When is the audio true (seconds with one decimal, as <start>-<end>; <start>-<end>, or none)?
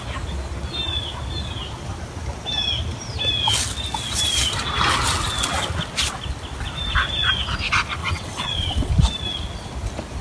0.0-8.0; 8.9-10.2